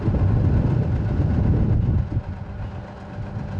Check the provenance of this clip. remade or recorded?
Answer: recorded